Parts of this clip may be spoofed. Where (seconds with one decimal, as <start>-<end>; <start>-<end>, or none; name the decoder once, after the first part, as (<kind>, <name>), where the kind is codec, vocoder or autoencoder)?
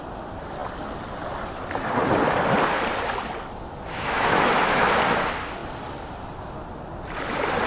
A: 3.9-4.9 (autoencoder, DAC-VAE)